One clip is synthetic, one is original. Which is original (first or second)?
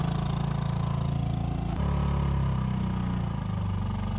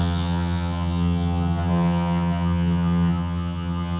first